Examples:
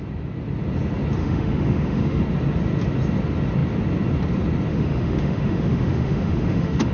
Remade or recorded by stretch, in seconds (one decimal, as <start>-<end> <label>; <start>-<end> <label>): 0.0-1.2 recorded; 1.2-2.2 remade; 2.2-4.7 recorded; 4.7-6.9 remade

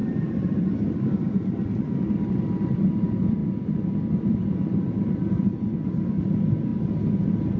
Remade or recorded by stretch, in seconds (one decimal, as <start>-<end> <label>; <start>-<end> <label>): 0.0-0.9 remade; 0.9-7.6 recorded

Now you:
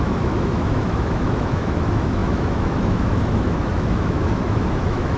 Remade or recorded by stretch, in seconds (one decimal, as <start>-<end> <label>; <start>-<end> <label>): 0.0-5.2 remade

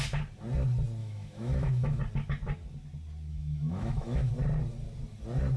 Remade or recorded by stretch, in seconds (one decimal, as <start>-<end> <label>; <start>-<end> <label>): 0.0-1.0 recorded; 1.0-2.0 remade; 2.0-3.3 recorded; 3.3-4.3 remade; 4.3-5.6 recorded

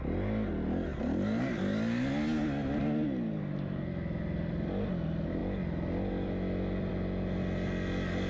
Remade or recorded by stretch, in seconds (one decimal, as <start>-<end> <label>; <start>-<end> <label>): 0.0-8.3 recorded

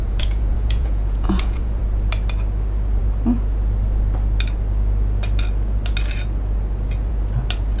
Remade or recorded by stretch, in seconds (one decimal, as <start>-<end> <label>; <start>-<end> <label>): 0.0-1.8 remade; 1.8-7.8 recorded